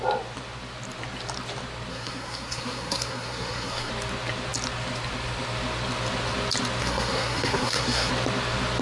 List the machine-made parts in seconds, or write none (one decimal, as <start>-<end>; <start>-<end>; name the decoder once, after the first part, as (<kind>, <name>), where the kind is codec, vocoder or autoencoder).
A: 1.9-3.9 (codec, SNAC); 6.8-8.1